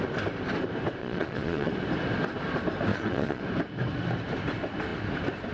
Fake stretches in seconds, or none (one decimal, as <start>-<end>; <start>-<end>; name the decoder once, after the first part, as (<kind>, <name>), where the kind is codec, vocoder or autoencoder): 1.0-1.7 (vocoder, Vocos); 2.9-3.4